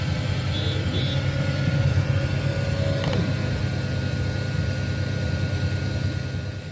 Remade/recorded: recorded